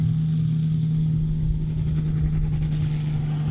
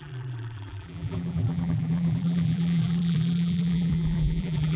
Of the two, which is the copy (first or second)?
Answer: second